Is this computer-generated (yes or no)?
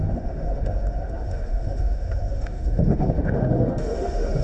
yes